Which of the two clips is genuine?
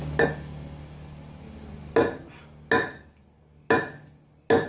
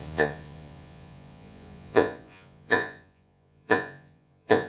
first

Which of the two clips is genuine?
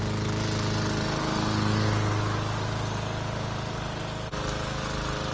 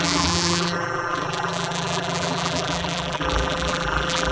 first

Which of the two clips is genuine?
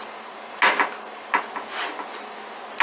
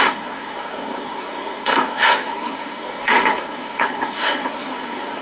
first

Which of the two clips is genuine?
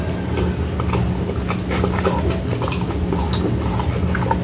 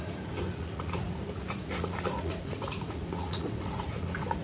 first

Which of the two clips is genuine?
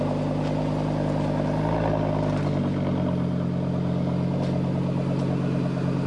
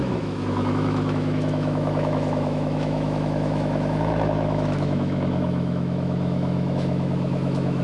first